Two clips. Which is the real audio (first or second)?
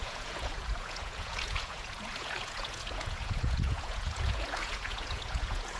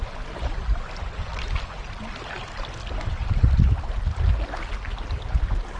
second